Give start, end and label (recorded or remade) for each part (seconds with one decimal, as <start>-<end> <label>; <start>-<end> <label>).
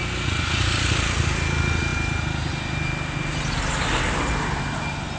0.0-5.2 recorded